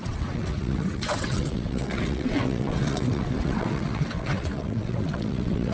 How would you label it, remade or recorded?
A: remade